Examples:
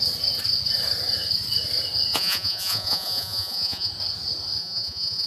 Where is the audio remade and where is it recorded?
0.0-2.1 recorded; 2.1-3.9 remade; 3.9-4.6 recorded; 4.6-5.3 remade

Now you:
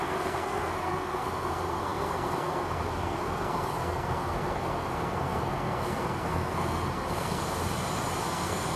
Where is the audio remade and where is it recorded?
0.0-7.4 remade; 7.4-8.2 recorded; 8.2-8.8 remade

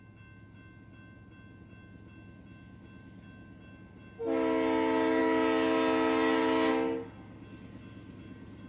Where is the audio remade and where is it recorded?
0.0-8.7 recorded

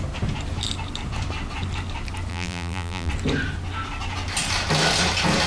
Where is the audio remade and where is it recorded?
0.0-2.3 recorded; 2.3-3.1 remade; 3.1-5.5 recorded

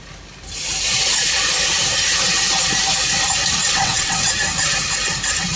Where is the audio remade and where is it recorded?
0.0-3.6 recorded; 3.6-4.3 remade; 4.3-5.6 recorded

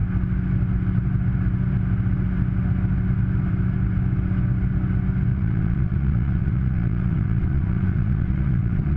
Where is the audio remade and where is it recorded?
0.0-5.3 recorded; 5.3-9.0 remade

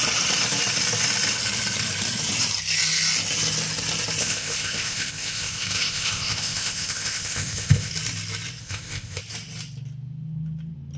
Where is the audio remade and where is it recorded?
0.0-4.2 recorded; 4.2-7.9 remade; 7.9-8.6 recorded; 8.6-9.2 remade; 9.2-11.0 recorded